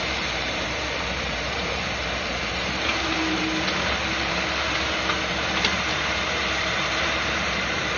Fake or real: fake